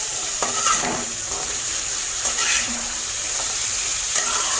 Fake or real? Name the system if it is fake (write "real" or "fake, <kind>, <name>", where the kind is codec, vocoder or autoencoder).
fake, vocoder, BigVGAN v2